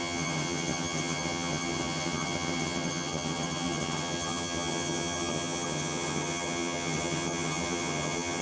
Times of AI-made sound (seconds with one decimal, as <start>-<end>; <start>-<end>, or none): 0.0-8.4